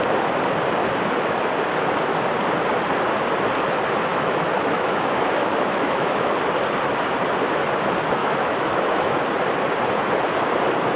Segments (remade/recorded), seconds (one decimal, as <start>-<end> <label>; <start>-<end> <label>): 0.0-0.8 recorded; 0.8-1.5 remade; 1.5-4.1 recorded; 4.1-6.3 remade; 6.3-8.2 recorded; 8.2-9.2 remade; 9.2-11.0 recorded